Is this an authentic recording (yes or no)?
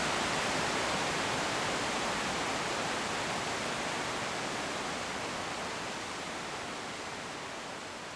yes